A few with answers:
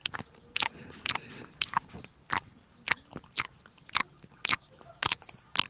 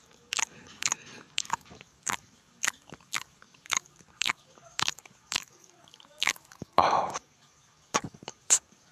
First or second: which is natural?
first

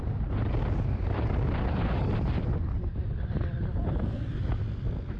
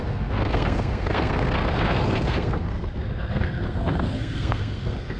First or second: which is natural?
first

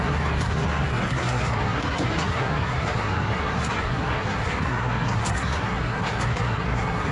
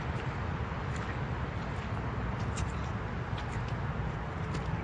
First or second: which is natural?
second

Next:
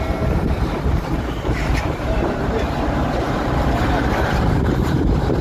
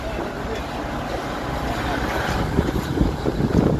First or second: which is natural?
second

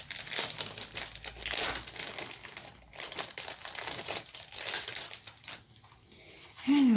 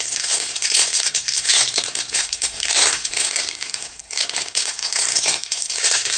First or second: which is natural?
first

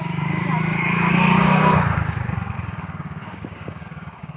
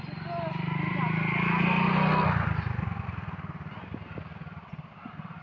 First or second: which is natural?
second